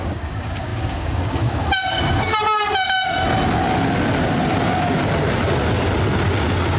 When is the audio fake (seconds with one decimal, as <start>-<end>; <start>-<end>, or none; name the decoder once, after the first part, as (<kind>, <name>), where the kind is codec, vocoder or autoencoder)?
0.0-2.3 (codec, DAC)

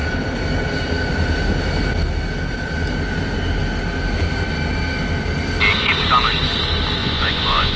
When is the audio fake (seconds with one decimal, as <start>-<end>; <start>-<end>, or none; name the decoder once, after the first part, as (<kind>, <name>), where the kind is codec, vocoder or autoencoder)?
7.0-7.8 (vocoder, Vocos)

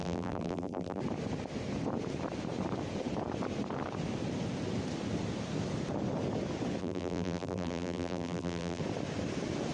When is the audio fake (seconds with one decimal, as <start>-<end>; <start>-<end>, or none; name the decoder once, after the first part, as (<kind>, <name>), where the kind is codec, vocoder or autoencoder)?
0.0-1.0 (vocoder, BigVGAN v2); 6.8-8.8

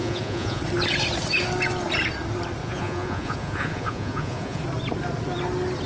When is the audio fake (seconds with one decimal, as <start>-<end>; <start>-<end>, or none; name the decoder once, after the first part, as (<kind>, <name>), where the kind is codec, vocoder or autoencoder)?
0.0-0.6 (vocoder, Vocos); 2.6-4.6

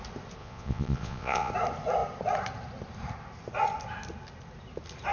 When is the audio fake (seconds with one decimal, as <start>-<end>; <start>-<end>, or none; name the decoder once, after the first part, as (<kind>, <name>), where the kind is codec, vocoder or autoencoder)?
0.4-1.5 (vocoder, Vocos)

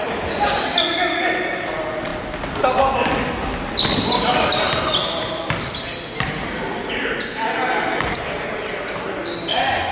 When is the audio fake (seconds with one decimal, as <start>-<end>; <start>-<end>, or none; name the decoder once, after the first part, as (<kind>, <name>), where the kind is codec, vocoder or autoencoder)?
none

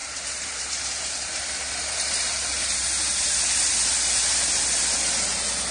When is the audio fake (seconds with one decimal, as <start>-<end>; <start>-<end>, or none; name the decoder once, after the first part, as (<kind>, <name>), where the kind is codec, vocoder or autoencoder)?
0.0-3.4 (vocoder, BigVGAN v2)

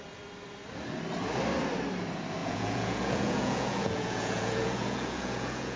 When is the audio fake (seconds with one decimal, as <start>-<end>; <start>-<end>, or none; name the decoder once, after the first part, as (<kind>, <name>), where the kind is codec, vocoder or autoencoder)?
2.4-5.8 (vocoder, Vocos)